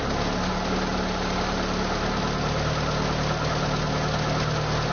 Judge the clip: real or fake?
real